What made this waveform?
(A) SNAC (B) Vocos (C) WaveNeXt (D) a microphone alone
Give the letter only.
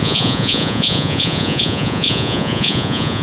B